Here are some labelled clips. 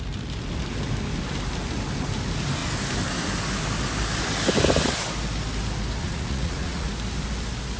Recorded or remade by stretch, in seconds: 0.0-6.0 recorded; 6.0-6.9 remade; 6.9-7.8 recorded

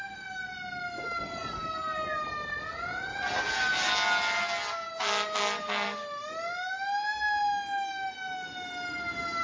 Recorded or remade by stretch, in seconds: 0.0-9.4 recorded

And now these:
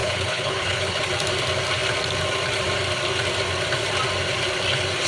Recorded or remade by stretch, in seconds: 0.0-1.0 remade; 1.0-5.1 recorded

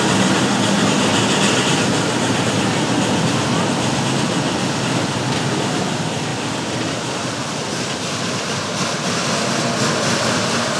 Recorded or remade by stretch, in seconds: 0.0-10.8 recorded

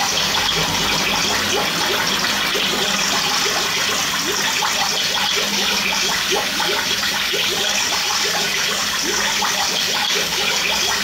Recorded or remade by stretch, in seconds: 0.0-0.6 remade; 0.6-5.5 recorded; 5.5-11.0 remade